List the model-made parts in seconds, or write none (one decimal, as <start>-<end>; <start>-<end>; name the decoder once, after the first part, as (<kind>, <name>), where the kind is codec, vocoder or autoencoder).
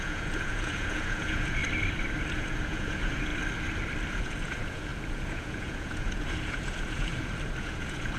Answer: 0.0-1.6 (vocoder, Vocos); 2.3-3.3; 4.1-7.1; 7.6-8.2